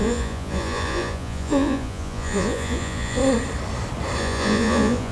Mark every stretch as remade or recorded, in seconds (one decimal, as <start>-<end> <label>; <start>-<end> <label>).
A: 0.0-3.2 remade; 3.2-4.2 recorded; 4.2-5.1 remade